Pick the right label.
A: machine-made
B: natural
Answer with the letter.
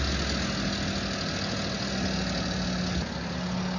B